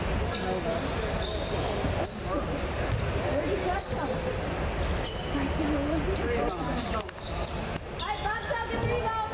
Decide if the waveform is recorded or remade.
recorded